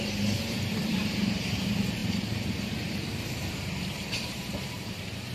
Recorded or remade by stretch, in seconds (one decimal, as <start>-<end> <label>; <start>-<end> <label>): 0.0-5.3 remade